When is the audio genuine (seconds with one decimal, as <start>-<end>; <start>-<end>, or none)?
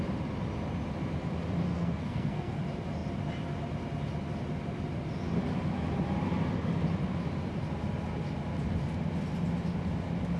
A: 0.0-1.7; 2.6-10.4